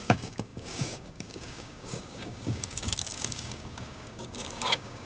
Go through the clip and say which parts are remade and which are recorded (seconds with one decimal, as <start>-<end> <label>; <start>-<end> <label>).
0.0-5.1 remade